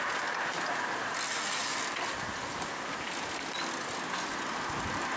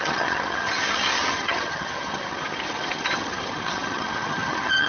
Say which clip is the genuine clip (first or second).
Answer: first